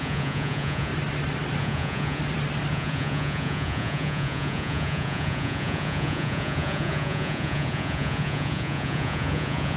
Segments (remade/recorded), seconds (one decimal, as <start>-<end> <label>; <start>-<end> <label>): 0.0-0.9 remade; 0.9-1.6 recorded; 1.6-2.2 remade; 2.2-2.7 recorded; 2.7-9.8 remade